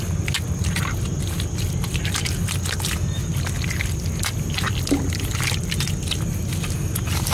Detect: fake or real real